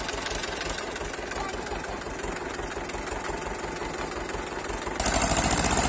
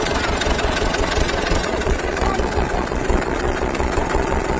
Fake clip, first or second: second